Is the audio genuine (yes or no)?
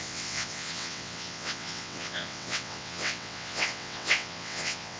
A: no